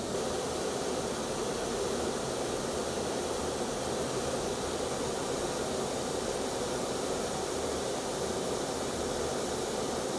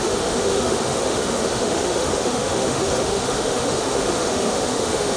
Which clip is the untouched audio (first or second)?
first